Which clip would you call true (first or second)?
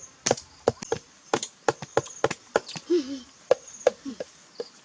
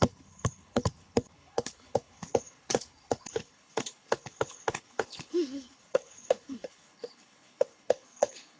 first